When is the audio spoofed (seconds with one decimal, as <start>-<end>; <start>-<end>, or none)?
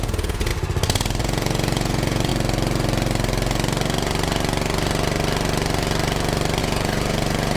0.0-0.5; 1.2-2.3; 6.6-7.6